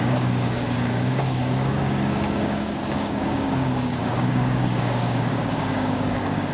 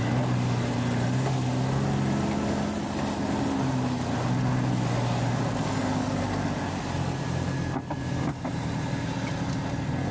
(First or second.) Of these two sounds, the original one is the second